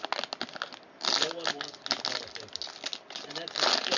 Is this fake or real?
real